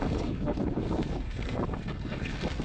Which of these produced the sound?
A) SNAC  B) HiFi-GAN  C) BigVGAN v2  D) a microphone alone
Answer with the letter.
A